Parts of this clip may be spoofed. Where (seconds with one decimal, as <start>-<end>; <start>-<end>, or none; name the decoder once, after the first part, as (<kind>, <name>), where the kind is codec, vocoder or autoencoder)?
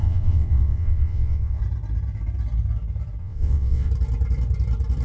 0.0-1.6 (vocoder, WaveNeXt); 3.2-3.9